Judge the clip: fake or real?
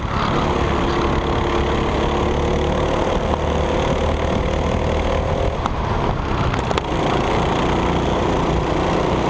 real